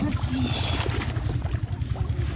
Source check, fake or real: real